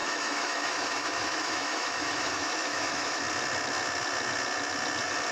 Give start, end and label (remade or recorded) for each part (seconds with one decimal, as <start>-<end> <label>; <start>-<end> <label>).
0.0-3.2 remade; 3.2-5.3 recorded